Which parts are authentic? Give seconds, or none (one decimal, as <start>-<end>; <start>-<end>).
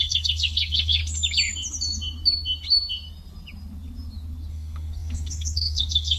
1.0-4.5